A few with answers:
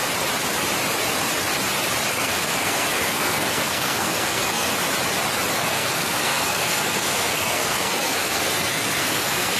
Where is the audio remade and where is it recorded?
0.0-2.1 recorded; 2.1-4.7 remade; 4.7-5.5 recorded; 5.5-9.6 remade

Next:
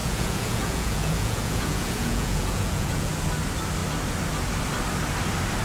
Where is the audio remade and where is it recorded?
0.0-3.1 remade; 3.1-5.6 recorded

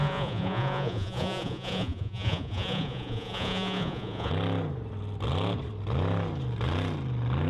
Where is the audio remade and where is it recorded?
0.0-4.3 remade; 4.3-7.5 recorded

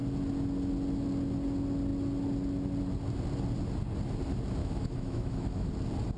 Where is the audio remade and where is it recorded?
0.0-4.6 recorded; 4.6-5.7 remade; 5.7-6.2 recorded

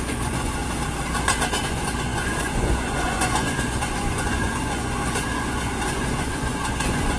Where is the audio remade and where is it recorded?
0.0-0.6 remade; 0.6-1.6 recorded; 1.6-7.2 remade

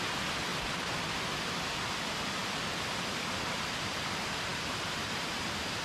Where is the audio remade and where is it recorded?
0.0-5.8 recorded

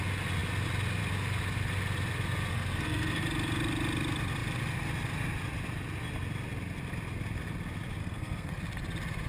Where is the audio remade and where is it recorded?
0.0-2.5 recorded; 2.5-3.2 remade; 3.2-8.0 recorded; 8.0-8.5 remade; 8.5-9.3 recorded